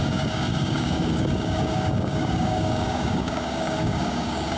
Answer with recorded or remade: remade